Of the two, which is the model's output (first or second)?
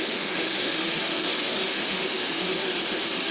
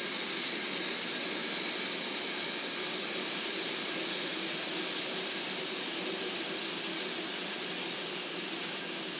first